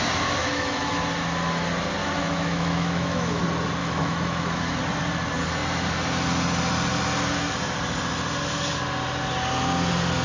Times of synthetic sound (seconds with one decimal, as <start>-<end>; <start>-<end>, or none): 0.4-1.0; 2.0-3.4; 3.8-4.8